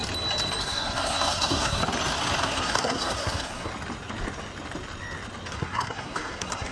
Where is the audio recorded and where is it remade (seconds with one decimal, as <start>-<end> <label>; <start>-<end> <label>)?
0.0-0.6 recorded; 0.6-1.8 remade; 1.8-2.4 recorded; 2.4-3.7 remade; 3.7-5.5 recorded; 5.5-6.7 remade